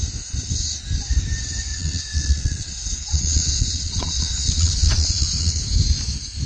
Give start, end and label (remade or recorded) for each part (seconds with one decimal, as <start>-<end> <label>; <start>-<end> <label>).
0.0-1.7 recorded; 1.7-5.6 remade; 5.6-6.5 recorded